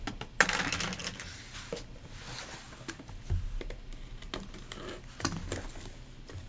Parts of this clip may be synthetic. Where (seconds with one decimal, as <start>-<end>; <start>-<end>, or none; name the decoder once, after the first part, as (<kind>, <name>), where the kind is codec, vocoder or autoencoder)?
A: none